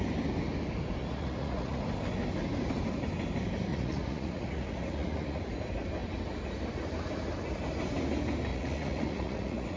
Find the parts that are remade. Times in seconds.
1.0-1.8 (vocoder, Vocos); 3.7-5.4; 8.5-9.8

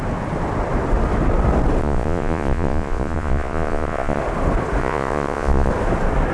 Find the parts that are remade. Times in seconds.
1.8-4.2 (vocoder, Vocos); 4.8-5.7

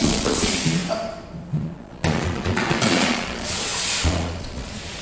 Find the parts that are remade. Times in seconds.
0.0-0.8 (vocoder, Vocos); 1.5-5.0